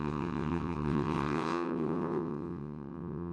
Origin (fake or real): fake